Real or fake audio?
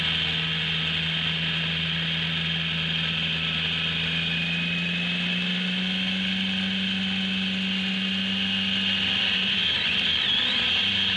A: real